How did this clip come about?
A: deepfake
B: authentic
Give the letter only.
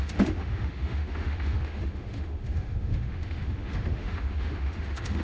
A